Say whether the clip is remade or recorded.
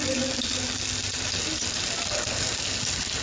recorded